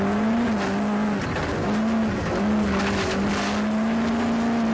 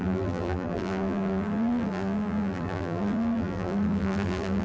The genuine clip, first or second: first